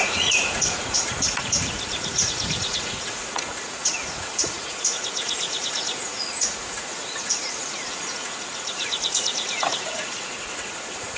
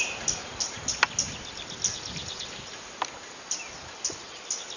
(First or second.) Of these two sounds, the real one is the second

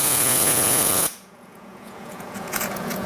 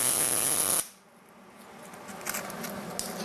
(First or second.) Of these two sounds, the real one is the second